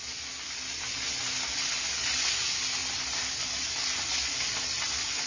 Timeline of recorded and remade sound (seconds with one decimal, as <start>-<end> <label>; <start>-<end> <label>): 0.0-5.3 recorded